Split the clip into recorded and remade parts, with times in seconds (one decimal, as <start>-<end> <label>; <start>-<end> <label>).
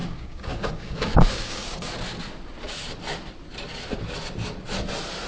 0.0-1.9 remade; 1.9-5.3 recorded